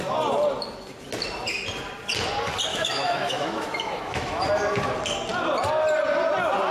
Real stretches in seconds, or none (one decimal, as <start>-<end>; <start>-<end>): 0.0-2.7; 4.4-6.7